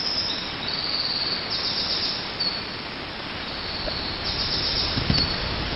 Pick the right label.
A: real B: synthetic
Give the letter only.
A